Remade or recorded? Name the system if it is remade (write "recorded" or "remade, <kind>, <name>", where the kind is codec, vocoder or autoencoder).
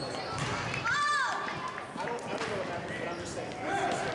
recorded